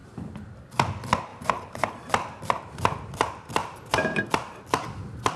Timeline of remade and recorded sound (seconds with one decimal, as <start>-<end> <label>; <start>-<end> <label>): 0.0-1.3 recorded; 1.3-2.1 remade; 2.1-3.6 recorded; 3.6-4.2 remade; 4.2-5.4 recorded